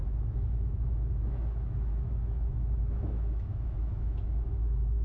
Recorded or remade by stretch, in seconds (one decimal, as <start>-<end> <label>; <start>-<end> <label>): 0.0-5.0 remade